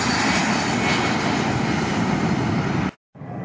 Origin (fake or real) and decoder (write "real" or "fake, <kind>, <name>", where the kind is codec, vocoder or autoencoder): real